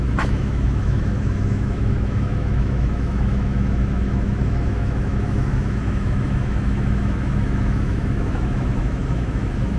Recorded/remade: remade